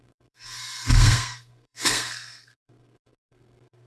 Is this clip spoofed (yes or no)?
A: yes